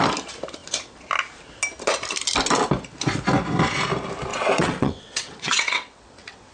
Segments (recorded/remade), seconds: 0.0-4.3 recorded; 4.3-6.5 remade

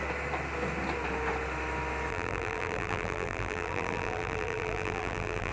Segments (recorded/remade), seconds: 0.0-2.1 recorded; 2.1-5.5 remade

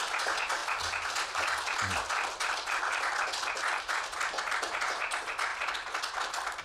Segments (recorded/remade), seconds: 0.0-0.6 remade; 0.6-3.8 recorded; 3.8-5.5 remade; 5.5-6.6 recorded

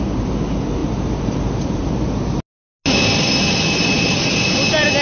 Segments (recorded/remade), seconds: 0.0-0.8 recorded; 0.8-1.9 remade; 1.9-5.0 recorded

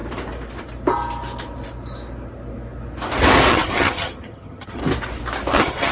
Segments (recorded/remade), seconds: 0.0-3.5 recorded; 3.5-4.8 remade; 4.8-5.5 recorded; 5.5-5.9 remade